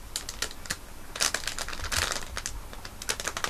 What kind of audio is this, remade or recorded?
recorded